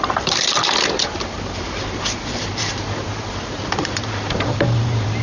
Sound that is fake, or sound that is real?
fake